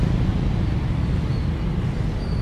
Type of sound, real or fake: real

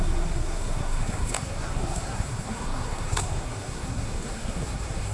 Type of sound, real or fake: fake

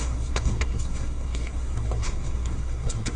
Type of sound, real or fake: fake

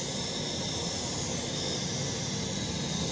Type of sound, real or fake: real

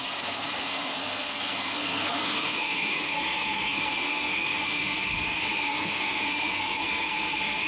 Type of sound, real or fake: fake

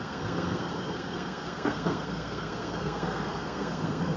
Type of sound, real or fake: fake